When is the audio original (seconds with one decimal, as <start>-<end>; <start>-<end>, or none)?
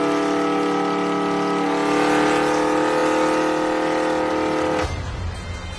0.0-5.8